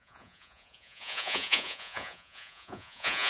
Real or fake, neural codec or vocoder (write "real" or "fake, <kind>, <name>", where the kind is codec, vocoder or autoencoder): fake, vocoder, Vocos